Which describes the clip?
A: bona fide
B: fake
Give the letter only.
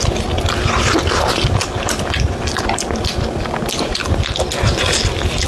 A